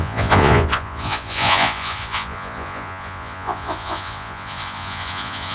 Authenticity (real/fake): fake